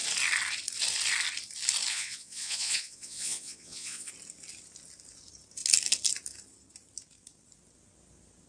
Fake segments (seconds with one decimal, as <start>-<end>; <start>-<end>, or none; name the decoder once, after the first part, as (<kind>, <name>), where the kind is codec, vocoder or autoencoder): 1.9-4.1 (vocoder, Vocos)